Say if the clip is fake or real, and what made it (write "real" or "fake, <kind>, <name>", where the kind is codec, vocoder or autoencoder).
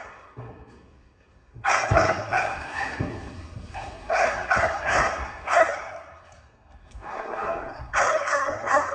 fake, codec, SNAC